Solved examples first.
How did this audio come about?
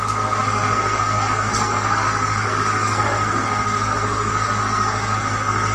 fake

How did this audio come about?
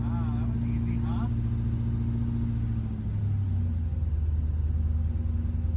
real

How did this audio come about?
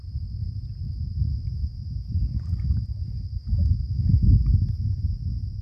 real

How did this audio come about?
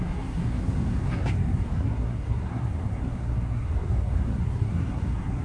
fake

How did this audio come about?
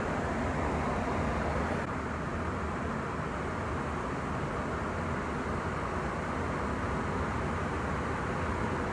real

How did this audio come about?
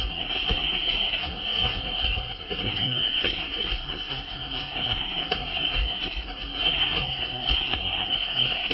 fake